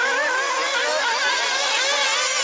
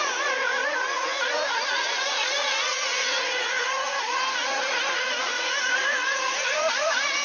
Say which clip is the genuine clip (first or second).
first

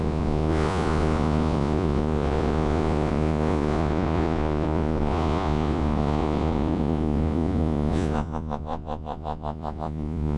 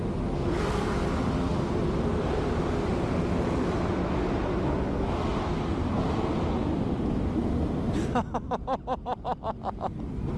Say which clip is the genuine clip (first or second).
second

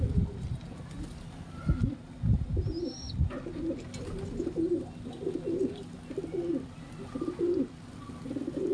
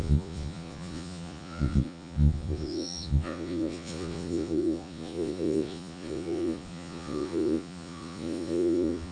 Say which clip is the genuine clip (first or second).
first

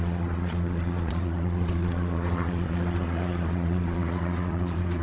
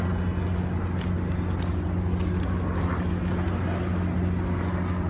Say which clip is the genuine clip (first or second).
second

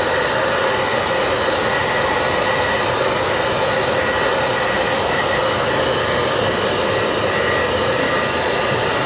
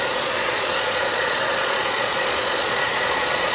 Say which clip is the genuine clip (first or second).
first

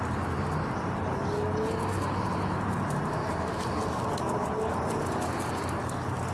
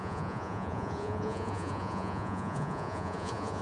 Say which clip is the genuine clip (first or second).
first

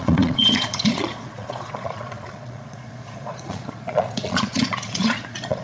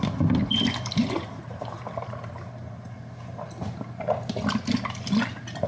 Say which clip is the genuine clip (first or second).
second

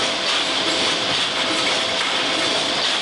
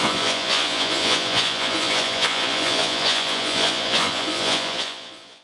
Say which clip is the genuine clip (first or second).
first